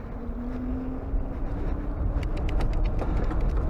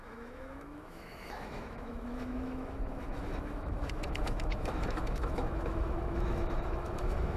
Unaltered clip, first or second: first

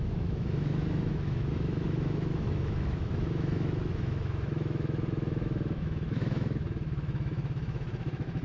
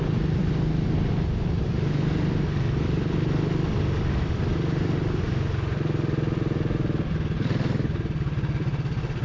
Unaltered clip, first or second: second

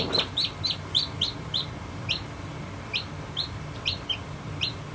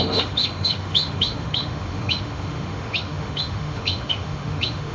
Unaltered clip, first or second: first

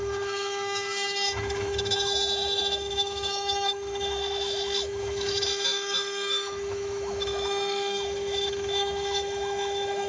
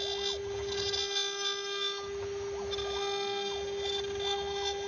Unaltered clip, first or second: second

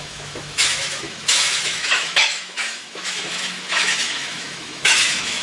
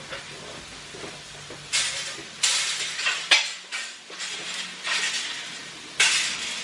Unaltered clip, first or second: second